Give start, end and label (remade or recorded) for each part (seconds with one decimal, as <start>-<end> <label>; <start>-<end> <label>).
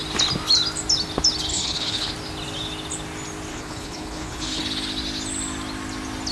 0.0-1.5 recorded; 1.5-2.1 remade; 2.1-3.5 recorded; 3.5-4.6 remade; 4.6-6.3 recorded